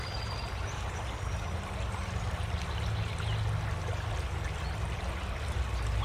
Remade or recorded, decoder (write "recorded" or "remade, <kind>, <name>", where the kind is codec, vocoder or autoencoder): recorded